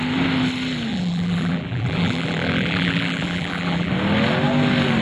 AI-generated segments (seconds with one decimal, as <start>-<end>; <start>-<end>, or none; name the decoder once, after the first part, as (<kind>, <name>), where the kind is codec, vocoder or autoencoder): 0.9-3.9 (vocoder, BigVGAN v2)